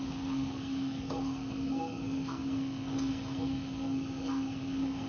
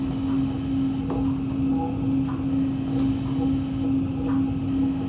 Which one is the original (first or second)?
second